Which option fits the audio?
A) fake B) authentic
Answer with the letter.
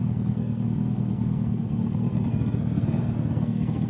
A